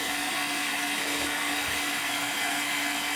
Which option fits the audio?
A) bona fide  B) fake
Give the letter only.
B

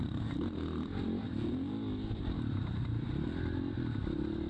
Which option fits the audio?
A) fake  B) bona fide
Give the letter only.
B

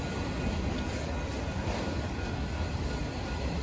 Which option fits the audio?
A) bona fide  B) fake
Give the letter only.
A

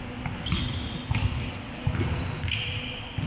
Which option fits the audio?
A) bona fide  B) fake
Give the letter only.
A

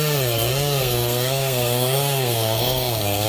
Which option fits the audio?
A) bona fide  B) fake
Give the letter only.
B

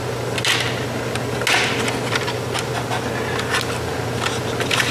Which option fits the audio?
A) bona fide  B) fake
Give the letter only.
A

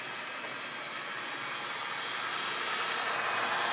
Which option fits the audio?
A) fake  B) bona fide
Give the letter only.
B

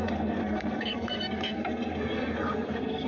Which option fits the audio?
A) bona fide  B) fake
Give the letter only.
B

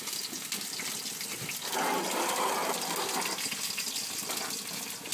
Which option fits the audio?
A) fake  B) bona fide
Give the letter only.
B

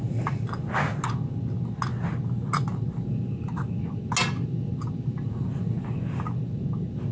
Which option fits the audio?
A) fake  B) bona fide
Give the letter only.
B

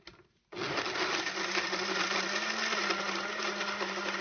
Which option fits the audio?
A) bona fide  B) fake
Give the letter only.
A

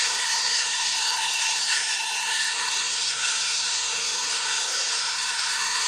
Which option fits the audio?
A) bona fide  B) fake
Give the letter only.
B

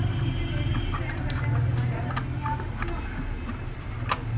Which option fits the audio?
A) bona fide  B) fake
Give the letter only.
A